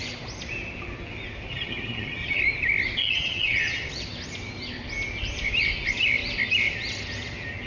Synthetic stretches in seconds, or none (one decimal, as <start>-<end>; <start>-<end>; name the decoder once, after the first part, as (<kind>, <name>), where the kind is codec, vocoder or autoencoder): 1.5-2.4 (vocoder, HiFi-GAN); 3.0-3.9